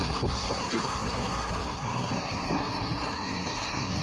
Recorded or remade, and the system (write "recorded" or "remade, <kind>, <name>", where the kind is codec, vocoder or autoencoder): remade, codec, SNAC